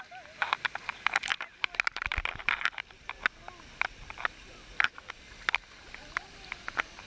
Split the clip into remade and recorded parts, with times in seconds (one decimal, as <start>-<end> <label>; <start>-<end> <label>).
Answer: 0.0-7.1 recorded